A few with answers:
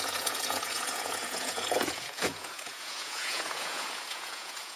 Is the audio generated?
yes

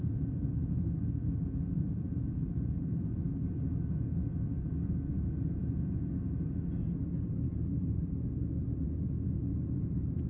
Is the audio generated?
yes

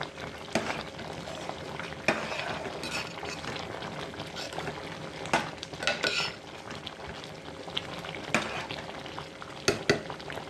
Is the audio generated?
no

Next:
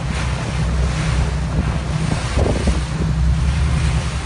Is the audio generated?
no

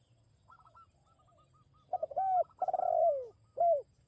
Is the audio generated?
no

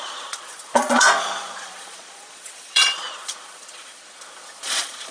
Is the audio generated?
yes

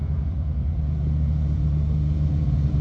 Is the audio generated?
yes